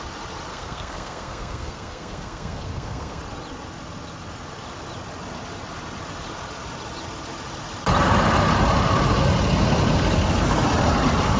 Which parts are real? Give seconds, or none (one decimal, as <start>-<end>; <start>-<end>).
0.0-0.5; 3.2-11.4